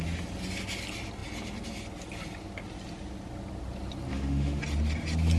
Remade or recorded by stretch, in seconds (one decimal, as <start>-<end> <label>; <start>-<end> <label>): 0.0-4.1 recorded; 4.1-4.6 remade; 4.6-5.4 recorded